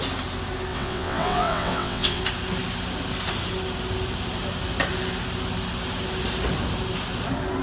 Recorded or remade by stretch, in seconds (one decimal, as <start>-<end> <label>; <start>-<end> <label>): 0.0-0.7 recorded; 0.7-2.2 remade; 2.2-7.6 recorded